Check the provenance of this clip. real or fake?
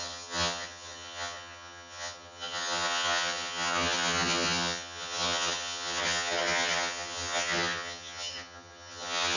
fake